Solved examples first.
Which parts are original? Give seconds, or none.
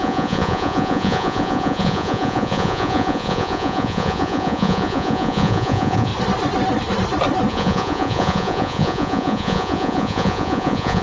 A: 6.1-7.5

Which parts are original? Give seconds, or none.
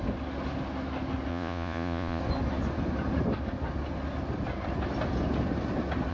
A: 0.0-1.3; 2.2-6.1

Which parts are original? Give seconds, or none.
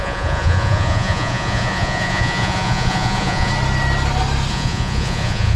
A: 3.5-4.5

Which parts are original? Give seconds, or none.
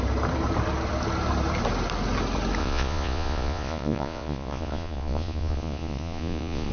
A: 0.0-2.6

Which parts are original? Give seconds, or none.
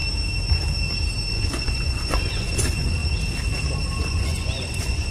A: 0.0-1.3; 3.0-4.0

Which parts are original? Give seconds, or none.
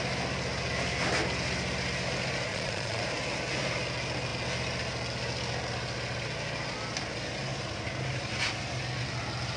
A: 0.0-2.5; 3.0-9.6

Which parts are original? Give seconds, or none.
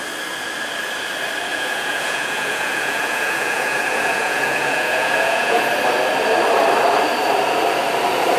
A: 0.0-1.5; 5.7-8.4